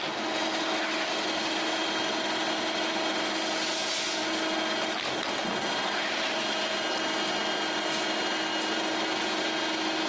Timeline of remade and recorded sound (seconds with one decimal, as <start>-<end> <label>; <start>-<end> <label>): 0.0-10.1 recorded